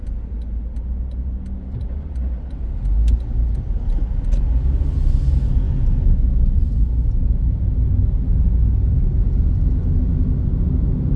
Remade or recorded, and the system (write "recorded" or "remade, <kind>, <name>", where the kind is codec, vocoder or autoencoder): recorded